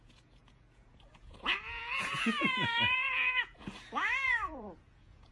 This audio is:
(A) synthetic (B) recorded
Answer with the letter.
A